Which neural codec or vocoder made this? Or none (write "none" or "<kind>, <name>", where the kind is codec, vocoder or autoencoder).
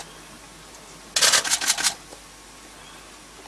none